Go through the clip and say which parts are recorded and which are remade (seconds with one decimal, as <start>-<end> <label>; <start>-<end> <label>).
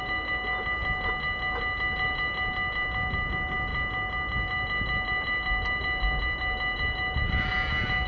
0.0-8.1 recorded